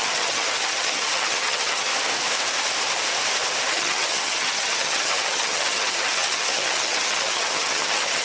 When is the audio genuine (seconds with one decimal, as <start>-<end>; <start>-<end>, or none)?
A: 1.9-3.7